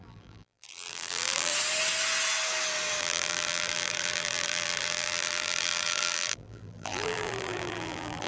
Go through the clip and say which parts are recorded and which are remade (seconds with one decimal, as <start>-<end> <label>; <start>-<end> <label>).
0.0-1.5 remade; 1.5-3.0 recorded; 3.0-8.3 remade